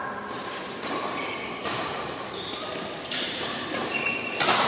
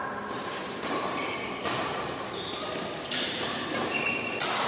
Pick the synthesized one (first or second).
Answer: first